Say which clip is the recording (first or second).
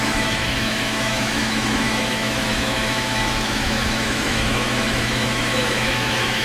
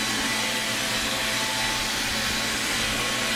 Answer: second